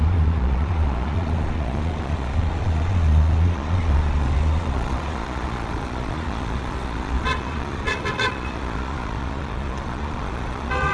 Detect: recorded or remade remade